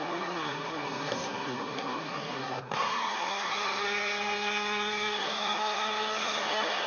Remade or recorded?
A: remade